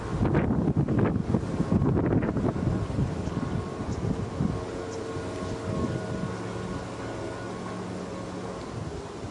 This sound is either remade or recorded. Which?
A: recorded